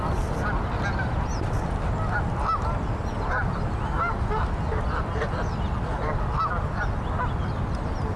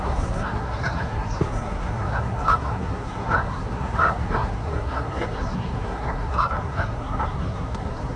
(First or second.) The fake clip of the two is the second